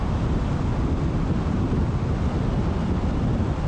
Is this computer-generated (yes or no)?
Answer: no